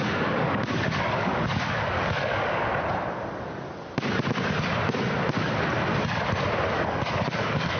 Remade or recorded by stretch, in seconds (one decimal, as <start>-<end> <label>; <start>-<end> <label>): 0.0-2.7 remade; 2.7-6.7 recorded; 6.7-7.8 remade